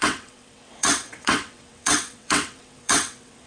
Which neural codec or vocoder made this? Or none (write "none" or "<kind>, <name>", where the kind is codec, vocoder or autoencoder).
vocoder, WaveNeXt